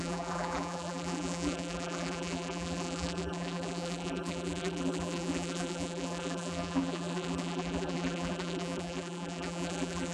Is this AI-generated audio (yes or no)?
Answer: yes